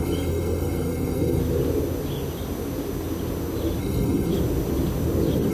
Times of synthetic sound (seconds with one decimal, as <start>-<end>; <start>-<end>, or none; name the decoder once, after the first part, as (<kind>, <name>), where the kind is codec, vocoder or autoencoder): 0.0-1.4 (codec, SNAC); 3.8-4.3